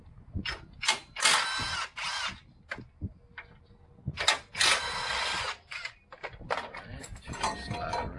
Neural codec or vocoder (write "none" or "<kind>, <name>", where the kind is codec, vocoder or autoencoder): none